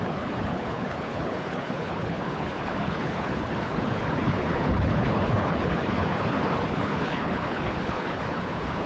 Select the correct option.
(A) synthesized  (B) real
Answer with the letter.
A